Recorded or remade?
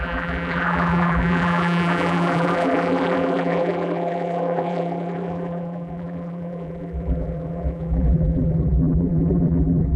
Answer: remade